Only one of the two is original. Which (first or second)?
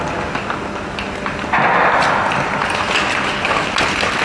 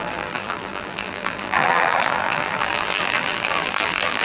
first